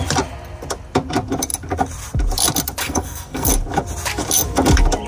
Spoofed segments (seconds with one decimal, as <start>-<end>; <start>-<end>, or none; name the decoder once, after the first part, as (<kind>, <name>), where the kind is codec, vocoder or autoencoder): 2.8-3.5 (codec, SNAC)